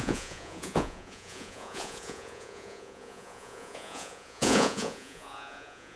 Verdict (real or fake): fake